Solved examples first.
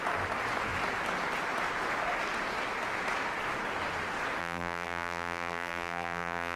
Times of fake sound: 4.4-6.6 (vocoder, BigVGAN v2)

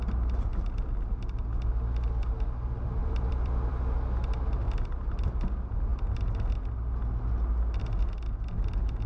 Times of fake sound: 3.0-3.8 (vocoder, BigVGAN v2)

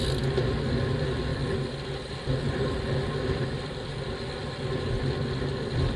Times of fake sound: none